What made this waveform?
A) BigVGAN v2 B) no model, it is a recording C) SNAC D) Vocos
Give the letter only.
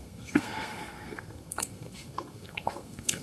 C